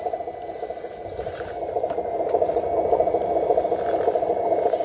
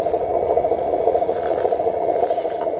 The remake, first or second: second